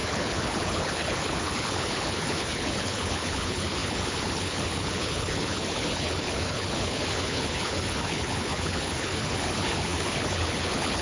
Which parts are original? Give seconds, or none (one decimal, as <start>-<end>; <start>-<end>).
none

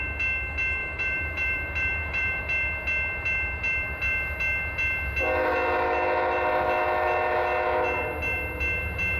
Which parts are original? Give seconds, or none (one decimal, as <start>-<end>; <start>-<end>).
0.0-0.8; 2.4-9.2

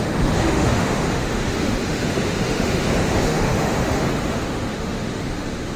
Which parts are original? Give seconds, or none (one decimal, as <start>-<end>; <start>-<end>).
none

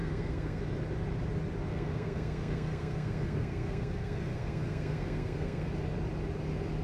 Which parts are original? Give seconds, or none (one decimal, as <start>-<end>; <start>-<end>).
0.6-1.7; 5.7-6.8